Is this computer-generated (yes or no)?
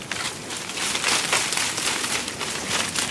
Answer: no